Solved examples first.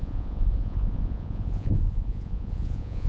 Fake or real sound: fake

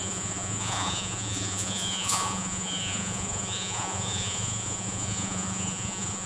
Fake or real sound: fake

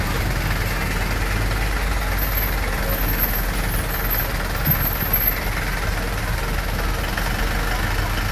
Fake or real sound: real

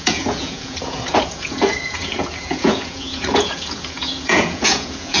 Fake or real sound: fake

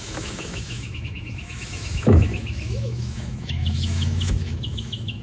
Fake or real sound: fake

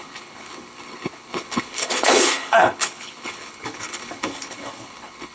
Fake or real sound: fake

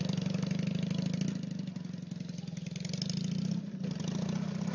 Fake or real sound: real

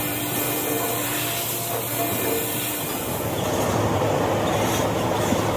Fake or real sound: real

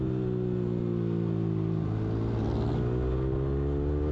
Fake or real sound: real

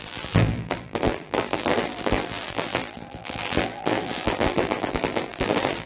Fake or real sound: fake